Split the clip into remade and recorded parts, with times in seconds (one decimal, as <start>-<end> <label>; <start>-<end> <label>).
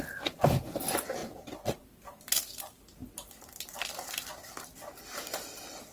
0.0-5.9 recorded